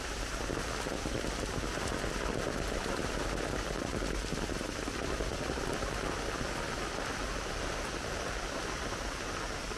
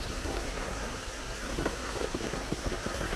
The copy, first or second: second